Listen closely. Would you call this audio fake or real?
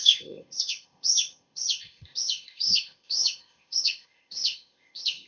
fake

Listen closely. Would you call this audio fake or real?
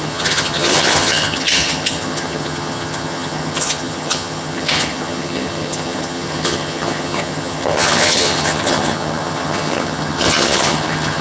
fake